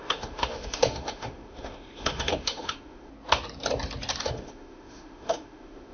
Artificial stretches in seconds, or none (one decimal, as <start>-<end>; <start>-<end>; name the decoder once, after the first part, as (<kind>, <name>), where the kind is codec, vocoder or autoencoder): 0.0-3.1 (autoencoder, DAC-VAE); 4.2-5.9